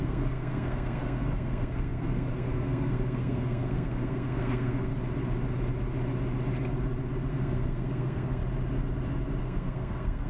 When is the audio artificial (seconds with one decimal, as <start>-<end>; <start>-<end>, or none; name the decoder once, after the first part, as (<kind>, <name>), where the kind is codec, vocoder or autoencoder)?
0.0-4.9 (codec, SNAC); 7.3-8.4; 9.4-10.3